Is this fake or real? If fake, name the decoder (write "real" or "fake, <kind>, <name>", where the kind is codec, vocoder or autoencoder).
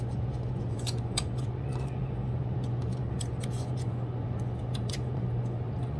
fake, vocoder, Vocos